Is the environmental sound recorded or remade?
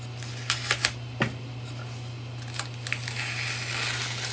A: recorded